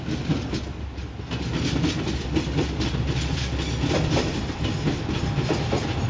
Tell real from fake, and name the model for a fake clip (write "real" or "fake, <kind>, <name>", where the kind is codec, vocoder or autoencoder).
real